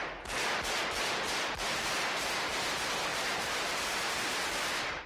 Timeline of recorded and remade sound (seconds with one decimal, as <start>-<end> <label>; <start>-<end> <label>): 0.0-3.1 recorded; 3.1-4.2 remade; 4.2-5.1 recorded